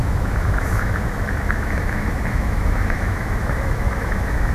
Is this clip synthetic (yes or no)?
yes